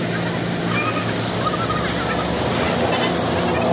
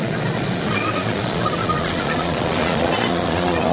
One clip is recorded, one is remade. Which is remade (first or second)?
second